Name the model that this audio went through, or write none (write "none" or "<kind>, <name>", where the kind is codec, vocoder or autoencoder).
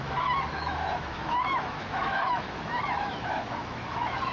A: autoencoder, DAC-VAE